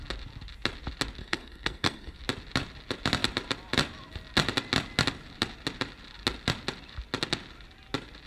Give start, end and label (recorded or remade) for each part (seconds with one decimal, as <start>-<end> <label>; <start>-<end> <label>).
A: 0.0-1.2 recorded; 1.2-2.2 remade; 2.2-8.3 recorded